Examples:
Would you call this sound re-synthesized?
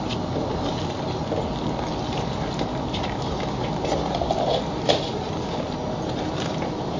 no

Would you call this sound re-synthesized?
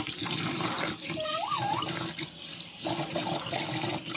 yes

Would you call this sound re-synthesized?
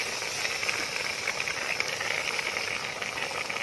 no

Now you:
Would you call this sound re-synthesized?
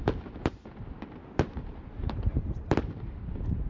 yes